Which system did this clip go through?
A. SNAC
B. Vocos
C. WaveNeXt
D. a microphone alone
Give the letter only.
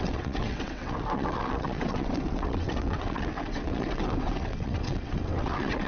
C